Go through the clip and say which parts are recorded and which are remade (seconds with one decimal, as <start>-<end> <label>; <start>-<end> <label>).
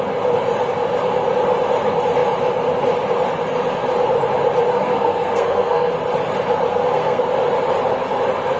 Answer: 0.0-4.7 recorded; 4.7-5.9 remade; 5.9-6.7 recorded; 6.7-7.2 remade; 7.2-8.6 recorded